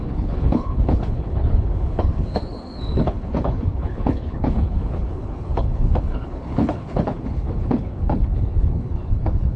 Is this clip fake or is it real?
fake